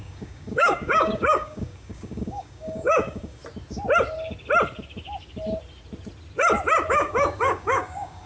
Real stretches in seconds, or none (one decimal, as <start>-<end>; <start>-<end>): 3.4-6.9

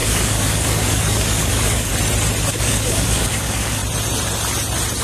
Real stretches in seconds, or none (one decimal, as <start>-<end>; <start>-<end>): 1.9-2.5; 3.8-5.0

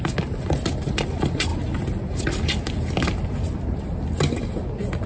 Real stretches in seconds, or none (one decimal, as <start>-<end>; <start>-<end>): 0.0-5.1

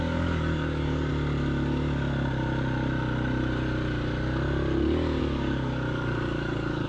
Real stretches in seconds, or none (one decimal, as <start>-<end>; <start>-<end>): 1.1-5.2